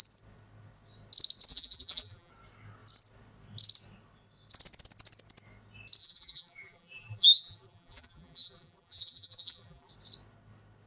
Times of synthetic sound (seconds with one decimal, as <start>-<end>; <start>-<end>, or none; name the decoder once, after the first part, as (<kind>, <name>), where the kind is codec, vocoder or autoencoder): 1.5-2.3 (vocoder, BigVGAN v2); 6.0-9.9